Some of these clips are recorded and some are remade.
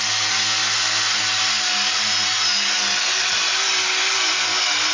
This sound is recorded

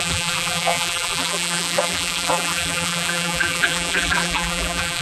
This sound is remade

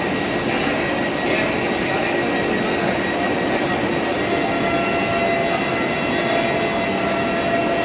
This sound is recorded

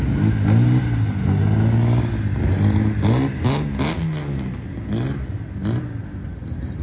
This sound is recorded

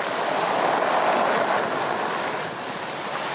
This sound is recorded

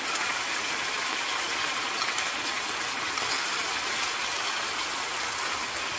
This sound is recorded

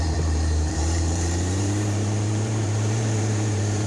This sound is remade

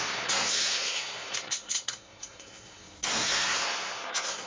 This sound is remade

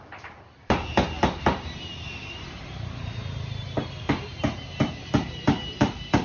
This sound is remade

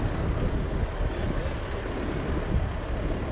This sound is recorded